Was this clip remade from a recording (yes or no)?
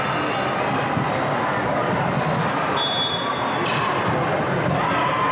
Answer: no